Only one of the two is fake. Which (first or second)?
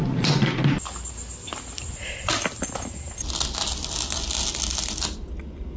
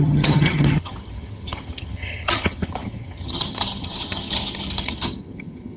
second